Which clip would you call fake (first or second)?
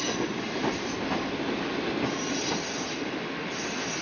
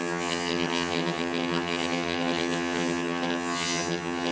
second